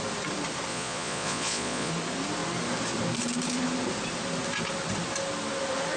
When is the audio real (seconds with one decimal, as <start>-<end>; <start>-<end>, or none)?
0.0-0.7; 1.9-6.0